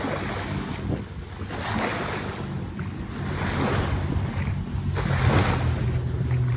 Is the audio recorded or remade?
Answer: recorded